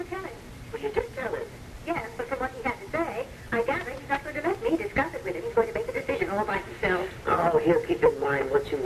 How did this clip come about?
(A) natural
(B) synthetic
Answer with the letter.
A